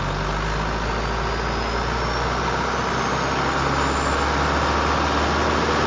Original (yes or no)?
yes